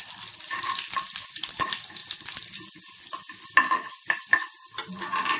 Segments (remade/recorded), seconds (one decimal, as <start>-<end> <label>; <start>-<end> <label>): 0.0-5.4 recorded